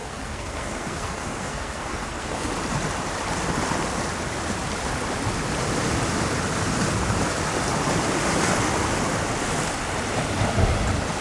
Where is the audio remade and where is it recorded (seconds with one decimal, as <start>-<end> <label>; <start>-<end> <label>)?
0.0-2.5 remade; 2.5-11.2 recorded